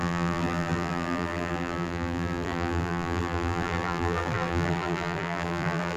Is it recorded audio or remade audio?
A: remade